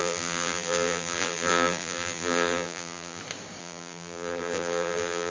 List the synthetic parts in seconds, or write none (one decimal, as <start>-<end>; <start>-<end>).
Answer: 0.0-3.2; 3.6-5.3